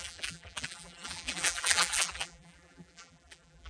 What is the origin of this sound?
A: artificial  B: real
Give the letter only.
A